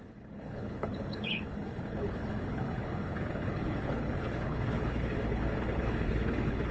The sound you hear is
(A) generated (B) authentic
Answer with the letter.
A